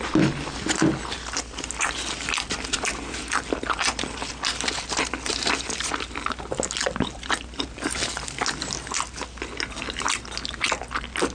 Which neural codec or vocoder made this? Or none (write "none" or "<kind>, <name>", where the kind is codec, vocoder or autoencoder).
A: none